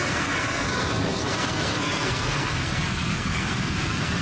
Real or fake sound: fake